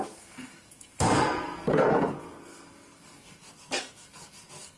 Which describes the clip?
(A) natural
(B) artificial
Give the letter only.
B